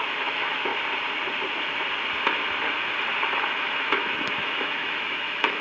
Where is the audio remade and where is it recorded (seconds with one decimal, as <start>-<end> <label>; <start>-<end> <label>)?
0.0-0.7 remade; 0.7-3.2 recorded; 3.2-5.6 remade